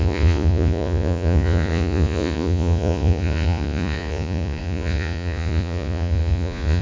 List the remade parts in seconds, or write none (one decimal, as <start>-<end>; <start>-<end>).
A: 0.0-6.8